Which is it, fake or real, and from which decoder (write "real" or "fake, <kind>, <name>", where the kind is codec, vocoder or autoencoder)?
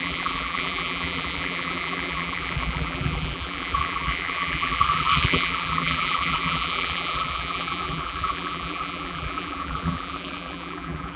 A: fake, vocoder, BigVGAN v2